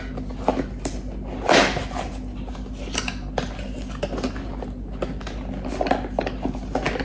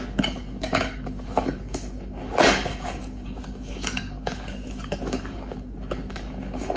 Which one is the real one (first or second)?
first